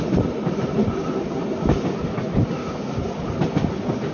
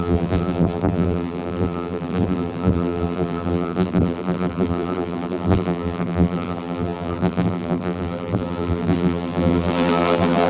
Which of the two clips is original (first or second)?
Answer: first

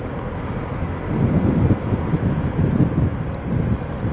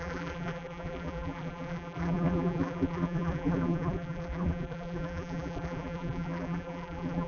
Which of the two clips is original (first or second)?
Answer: first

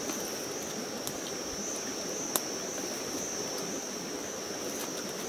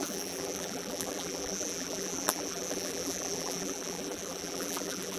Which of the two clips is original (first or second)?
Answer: first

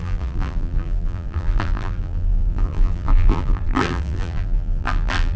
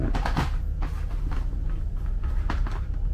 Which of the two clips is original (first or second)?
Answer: second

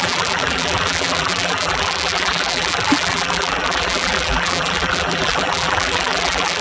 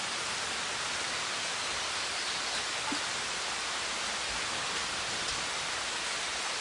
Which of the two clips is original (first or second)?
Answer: second